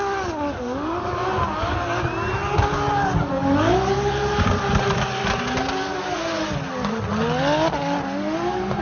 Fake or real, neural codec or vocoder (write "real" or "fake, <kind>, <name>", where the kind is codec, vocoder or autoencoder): real